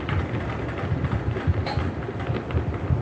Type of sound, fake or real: fake